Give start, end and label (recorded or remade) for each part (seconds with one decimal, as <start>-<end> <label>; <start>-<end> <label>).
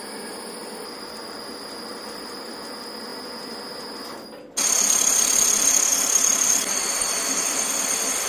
0.0-0.6 recorded; 0.6-1.4 remade; 1.4-1.9 recorded; 1.9-2.7 remade; 2.7-8.3 recorded